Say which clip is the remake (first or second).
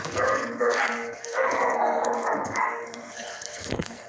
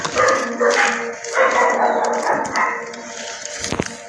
first